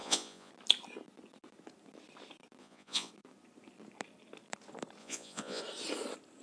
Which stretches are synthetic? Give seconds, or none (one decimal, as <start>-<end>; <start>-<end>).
0.0-0.5; 2.6-3.1; 5.0-5.6